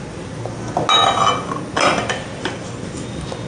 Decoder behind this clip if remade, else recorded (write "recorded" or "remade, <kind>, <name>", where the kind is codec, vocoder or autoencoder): recorded